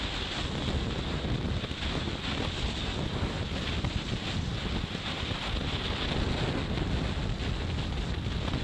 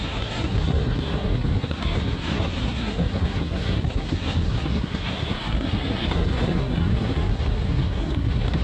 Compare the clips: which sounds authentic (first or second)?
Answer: first